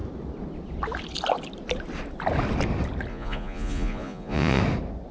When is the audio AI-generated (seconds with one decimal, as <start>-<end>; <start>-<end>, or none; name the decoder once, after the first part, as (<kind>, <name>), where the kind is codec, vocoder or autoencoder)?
3.1-4.6 (vocoder, Vocos)